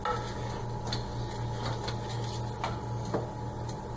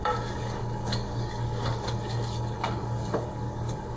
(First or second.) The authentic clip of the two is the first